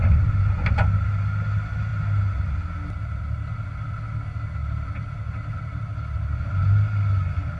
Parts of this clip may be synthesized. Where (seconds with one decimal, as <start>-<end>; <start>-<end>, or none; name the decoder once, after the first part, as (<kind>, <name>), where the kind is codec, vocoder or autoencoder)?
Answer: 4.6-5.8 (vocoder, BigVGAN v2)